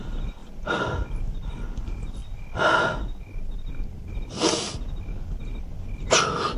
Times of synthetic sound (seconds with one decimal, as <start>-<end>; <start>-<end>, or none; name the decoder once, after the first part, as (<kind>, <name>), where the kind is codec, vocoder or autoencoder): none